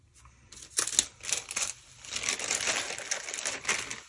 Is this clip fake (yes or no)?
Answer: no